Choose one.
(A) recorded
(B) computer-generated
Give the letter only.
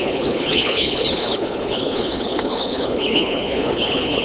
B